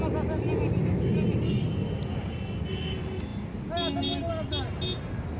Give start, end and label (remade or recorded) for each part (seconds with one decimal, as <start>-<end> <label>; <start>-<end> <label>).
0.0-5.4 recorded